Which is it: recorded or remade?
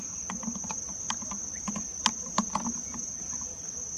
remade